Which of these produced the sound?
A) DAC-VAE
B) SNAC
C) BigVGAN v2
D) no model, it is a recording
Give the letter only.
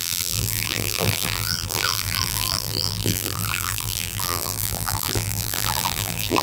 C